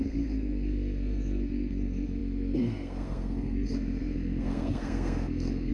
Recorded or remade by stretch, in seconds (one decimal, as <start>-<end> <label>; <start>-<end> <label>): 0.0-5.7 remade